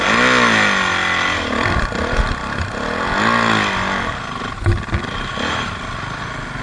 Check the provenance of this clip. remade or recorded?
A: recorded